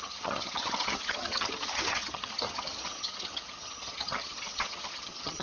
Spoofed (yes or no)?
yes